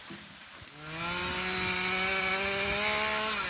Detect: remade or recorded recorded